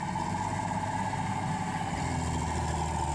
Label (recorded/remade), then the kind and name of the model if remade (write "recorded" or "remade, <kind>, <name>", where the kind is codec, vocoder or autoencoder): recorded